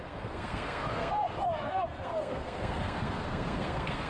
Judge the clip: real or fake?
fake